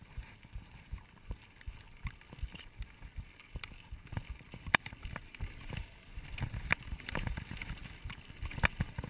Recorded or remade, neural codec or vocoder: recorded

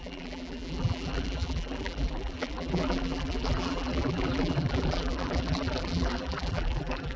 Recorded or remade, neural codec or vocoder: remade, vocoder, BigVGAN v2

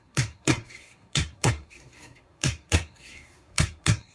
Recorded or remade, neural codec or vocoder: remade, codec, SNAC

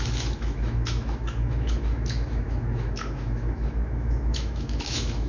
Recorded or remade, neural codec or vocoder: remade, autoencoder, DAC-VAE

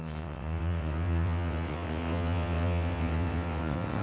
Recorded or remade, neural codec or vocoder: remade, vocoder, WaveNeXt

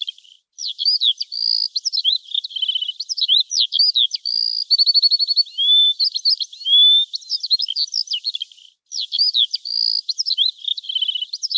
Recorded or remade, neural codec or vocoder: recorded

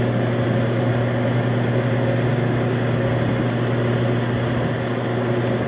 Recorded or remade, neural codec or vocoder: recorded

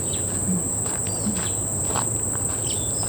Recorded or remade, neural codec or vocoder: recorded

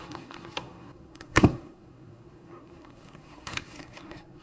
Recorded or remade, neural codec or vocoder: remade, codec, SNAC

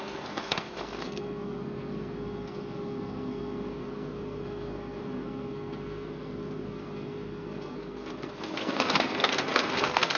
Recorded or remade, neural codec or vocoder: remade, codec, SNAC